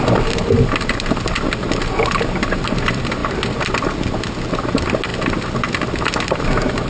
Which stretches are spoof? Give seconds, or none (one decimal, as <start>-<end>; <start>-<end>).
none